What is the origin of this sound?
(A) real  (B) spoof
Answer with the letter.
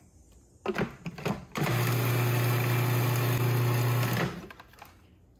A